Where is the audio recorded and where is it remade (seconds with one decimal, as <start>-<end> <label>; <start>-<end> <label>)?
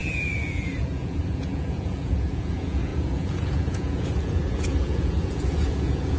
0.0-6.2 remade